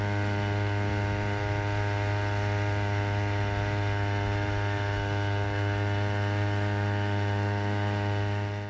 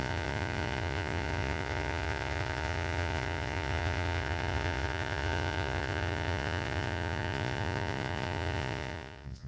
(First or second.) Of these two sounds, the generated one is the second